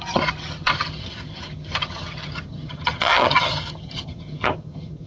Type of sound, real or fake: fake